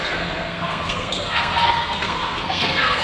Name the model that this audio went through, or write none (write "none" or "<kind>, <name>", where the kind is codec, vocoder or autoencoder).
codec, SNAC